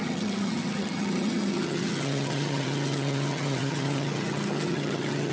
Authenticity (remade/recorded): remade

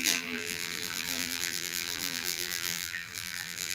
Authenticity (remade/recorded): remade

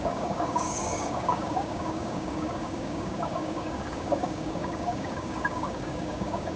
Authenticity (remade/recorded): remade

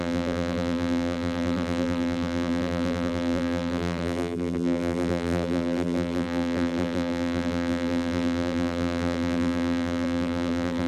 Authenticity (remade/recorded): remade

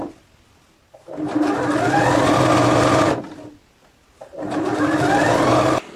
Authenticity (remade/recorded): recorded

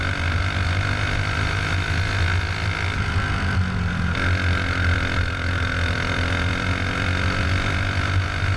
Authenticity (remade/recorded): recorded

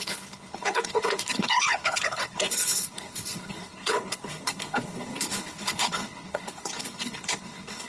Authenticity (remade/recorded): remade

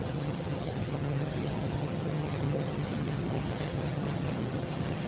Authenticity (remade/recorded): remade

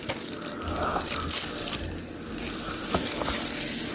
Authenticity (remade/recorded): recorded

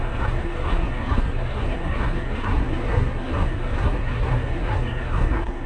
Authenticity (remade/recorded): remade